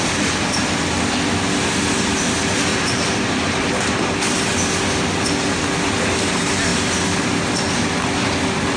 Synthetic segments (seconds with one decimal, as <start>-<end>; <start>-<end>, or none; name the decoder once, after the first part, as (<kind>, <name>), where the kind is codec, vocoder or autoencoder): 2.7-3.7 (vocoder, BigVGAN v2)